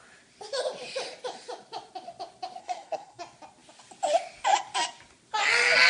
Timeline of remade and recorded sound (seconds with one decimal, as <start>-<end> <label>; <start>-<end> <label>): 0.0-2.6 recorded; 2.6-3.2 remade; 3.2-5.9 recorded